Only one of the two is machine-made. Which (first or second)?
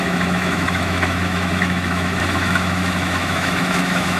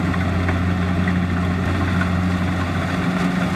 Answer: first